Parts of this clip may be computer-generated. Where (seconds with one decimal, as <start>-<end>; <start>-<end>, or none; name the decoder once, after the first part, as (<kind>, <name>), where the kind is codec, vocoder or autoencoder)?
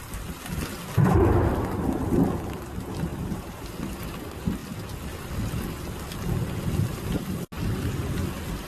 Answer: 3.1-3.8 (vocoder, BigVGAN v2)